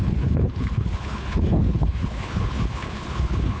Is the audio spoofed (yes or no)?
yes